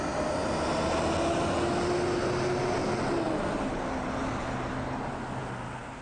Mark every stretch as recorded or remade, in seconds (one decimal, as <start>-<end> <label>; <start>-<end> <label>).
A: 0.0-6.0 recorded